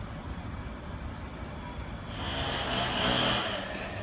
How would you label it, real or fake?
real